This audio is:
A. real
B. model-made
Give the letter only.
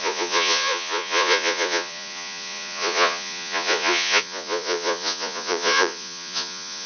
B